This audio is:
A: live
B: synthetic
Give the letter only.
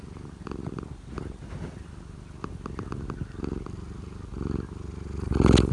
A